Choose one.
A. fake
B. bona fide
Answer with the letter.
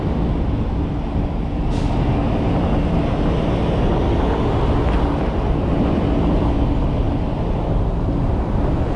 B